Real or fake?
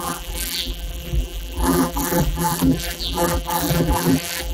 fake